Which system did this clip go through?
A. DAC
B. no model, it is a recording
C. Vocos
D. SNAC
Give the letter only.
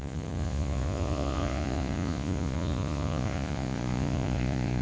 C